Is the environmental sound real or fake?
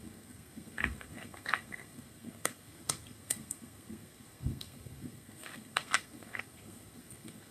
fake